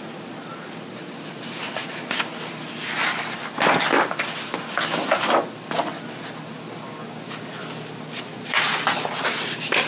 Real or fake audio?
real